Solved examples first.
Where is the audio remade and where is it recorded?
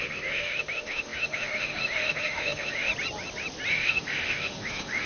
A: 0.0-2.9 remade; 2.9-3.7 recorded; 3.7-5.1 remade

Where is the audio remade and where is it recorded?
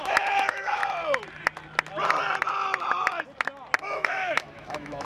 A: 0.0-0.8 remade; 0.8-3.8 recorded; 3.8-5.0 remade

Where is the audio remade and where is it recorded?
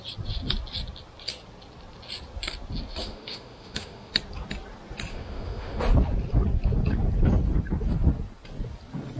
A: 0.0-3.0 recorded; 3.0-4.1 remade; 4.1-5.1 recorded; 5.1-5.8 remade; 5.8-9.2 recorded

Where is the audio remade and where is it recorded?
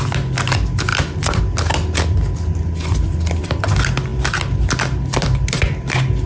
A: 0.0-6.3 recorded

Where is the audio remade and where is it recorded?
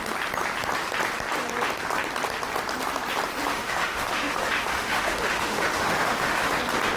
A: 0.0-3.5 recorded; 3.5-6.5 remade; 6.5-7.0 recorded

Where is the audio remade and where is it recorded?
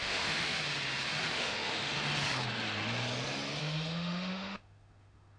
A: 0.0-0.6 remade; 0.6-1.3 recorded; 1.3-2.0 remade; 2.0-3.6 recorded; 3.6-5.4 remade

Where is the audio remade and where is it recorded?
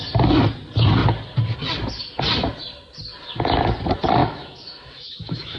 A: 0.0-4.2 recorded; 4.2-5.6 remade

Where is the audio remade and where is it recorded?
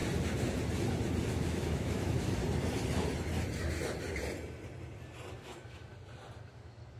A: 0.0-1.3 recorded; 1.3-2.4 remade; 2.4-5.4 recorded; 5.4-5.9 remade; 5.9-6.5 recorded; 6.5-7.0 remade